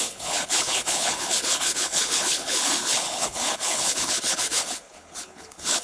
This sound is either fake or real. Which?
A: fake